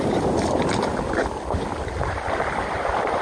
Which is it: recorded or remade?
recorded